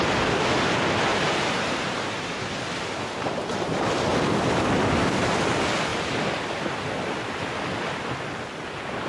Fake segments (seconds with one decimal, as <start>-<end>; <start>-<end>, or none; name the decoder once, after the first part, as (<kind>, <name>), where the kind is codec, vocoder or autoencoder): 1.1-3.4 (vocoder, BigVGAN v2)